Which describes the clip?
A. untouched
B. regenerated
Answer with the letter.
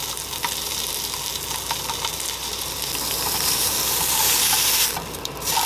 A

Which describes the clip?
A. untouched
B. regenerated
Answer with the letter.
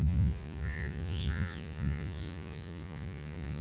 B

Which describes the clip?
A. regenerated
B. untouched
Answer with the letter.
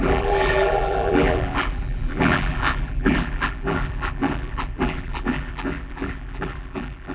A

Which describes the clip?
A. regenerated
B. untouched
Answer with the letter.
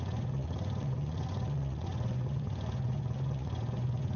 A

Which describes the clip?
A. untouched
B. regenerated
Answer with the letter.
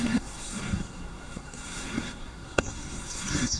B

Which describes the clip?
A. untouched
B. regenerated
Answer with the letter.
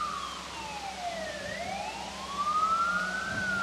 A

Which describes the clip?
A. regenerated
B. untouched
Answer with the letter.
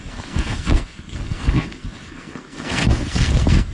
A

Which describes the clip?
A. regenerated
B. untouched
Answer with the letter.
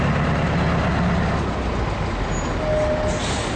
B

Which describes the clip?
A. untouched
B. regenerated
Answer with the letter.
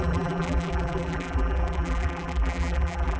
B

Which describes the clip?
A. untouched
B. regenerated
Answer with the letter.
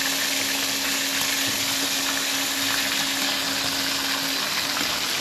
A